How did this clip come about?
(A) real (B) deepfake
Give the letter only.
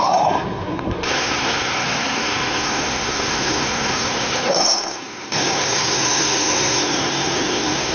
B